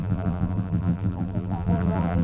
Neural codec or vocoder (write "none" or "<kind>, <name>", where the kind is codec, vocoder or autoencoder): vocoder, BigVGAN v2